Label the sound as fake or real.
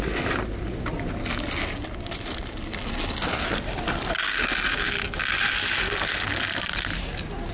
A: real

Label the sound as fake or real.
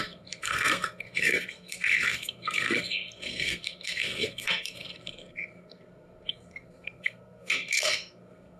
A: fake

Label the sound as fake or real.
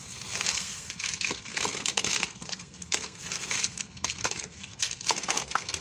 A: fake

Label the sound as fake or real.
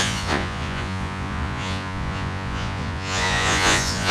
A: fake